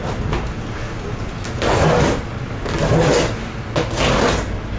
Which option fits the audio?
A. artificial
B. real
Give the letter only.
B